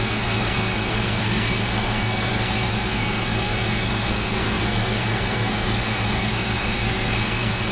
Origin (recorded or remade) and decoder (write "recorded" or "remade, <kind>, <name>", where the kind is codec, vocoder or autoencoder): remade, codec, SNAC